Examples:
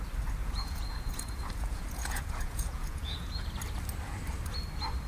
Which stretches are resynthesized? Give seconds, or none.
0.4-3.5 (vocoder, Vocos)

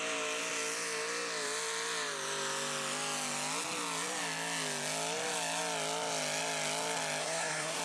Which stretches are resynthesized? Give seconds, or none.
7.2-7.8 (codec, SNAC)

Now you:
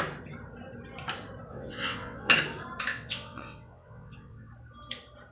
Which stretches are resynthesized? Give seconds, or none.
1.5-2.3 (vocoder, WaveNeXt); 2.9-4.5